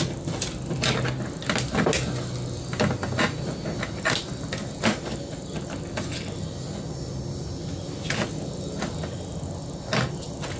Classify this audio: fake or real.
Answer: real